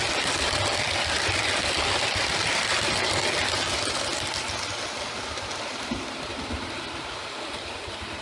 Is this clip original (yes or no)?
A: yes